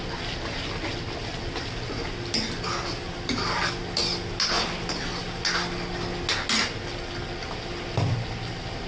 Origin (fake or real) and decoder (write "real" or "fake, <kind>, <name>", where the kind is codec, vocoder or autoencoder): real